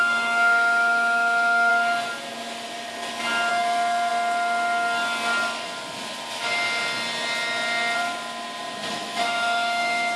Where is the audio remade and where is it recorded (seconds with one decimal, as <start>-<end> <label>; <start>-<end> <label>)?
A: 0.0-1.7 remade; 1.7-3.5 recorded; 3.5-4.1 remade; 4.1-8.9 recorded; 8.9-10.2 remade